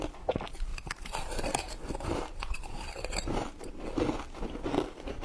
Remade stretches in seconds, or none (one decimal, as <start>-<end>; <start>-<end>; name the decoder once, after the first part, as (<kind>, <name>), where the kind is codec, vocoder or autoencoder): 0.7-3.8 (vocoder, BigVGAN v2)